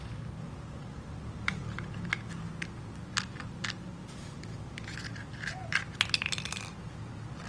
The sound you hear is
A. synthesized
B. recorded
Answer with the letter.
B